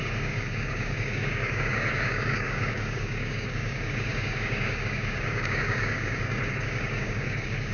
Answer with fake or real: fake